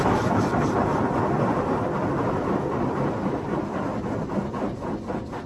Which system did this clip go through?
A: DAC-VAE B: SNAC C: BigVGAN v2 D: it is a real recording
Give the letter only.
D